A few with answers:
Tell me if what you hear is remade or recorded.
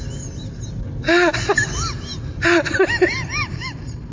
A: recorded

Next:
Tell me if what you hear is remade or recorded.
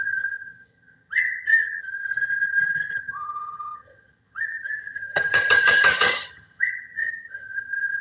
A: remade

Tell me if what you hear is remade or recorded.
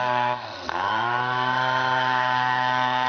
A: remade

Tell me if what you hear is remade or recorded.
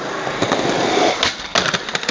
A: recorded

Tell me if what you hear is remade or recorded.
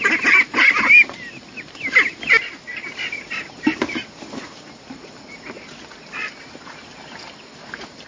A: recorded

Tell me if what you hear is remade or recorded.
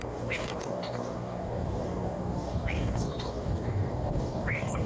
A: remade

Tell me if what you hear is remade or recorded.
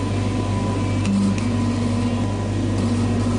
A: recorded